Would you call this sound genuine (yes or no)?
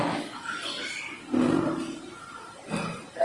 yes